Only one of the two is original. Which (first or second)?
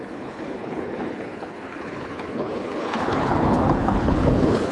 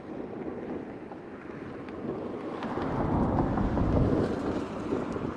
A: second